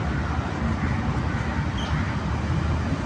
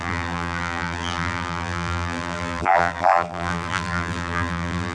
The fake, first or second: second